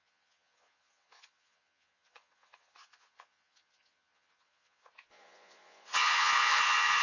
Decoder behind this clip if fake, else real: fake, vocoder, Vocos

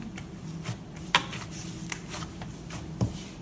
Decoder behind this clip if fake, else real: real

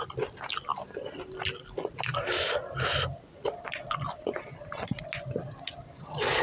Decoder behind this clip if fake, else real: real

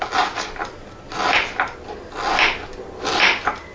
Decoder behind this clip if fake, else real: real